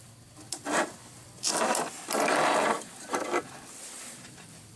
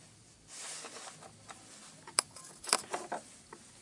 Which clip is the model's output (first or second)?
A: first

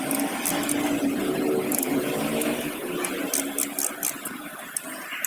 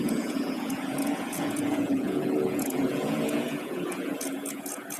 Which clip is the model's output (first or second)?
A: second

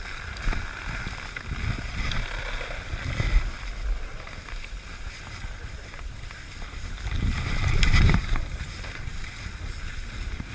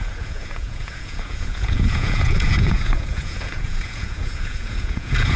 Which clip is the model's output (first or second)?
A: second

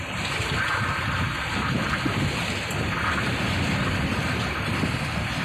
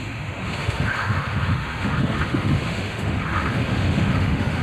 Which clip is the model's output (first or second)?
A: second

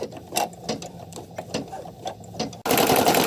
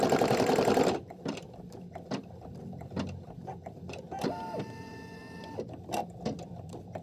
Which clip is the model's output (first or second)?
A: second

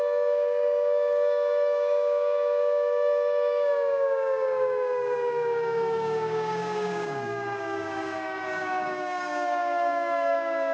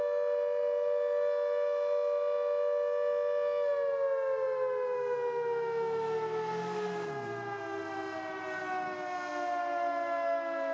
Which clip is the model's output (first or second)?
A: first